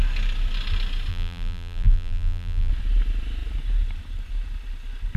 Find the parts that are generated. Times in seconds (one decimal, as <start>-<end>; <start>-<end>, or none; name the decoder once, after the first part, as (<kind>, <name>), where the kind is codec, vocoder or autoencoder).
1.1-2.7 (vocoder, BigVGAN v2)